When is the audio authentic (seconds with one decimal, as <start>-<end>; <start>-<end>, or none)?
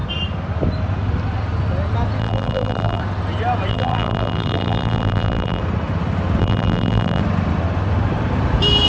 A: 0.0-2.2; 3.0-3.7; 5.6-6.4; 7.2-8.9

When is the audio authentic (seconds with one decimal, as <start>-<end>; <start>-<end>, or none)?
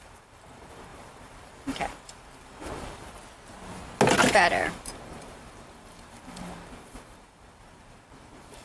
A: 3.2-4.7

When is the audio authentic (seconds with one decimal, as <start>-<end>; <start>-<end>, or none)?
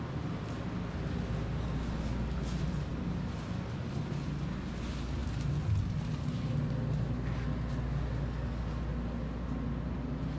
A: 0.0-10.4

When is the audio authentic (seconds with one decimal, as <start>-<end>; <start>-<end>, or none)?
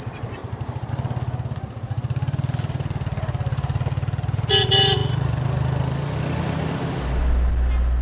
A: 0.0-0.4; 0.9-8.0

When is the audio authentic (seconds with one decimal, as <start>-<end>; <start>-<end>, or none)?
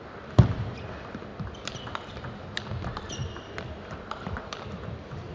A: none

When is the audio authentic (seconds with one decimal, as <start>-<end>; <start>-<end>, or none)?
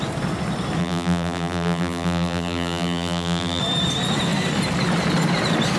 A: 0.0-0.8; 3.6-5.8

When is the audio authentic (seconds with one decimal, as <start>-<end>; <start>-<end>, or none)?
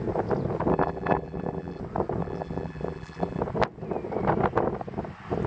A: 0.0-0.7; 1.8-2.2; 3.4-5.5